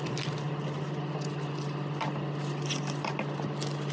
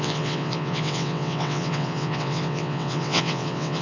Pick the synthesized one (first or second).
second